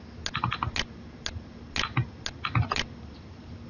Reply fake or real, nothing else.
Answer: real